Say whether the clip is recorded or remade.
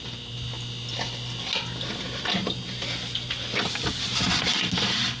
recorded